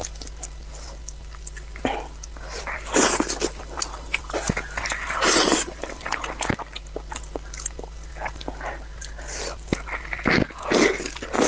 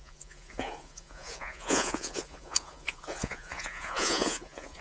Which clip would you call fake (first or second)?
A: second